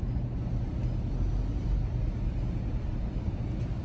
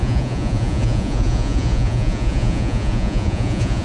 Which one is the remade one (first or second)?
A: second